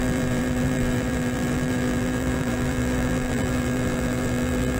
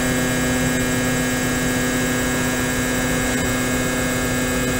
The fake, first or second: first